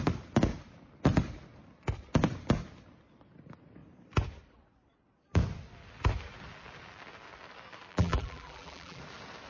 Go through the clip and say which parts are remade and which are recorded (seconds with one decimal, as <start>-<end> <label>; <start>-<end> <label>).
0.0-7.9 recorded; 7.9-9.0 remade; 9.0-9.5 recorded